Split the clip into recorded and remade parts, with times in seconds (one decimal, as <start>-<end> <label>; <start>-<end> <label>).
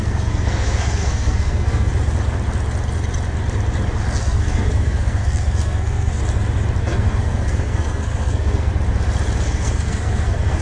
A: 0.0-1.9 remade; 1.9-4.2 recorded; 4.2-6.2 remade; 6.2-6.8 recorded; 6.8-8.7 remade; 8.7-9.4 recorded; 9.4-10.6 remade